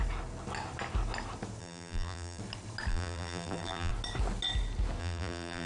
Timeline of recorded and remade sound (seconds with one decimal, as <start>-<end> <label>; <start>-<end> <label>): 0.0-1.6 recorded; 1.6-2.4 remade; 2.4-2.9 recorded; 2.9-3.9 remade; 3.9-5.0 recorded; 5.0-5.7 remade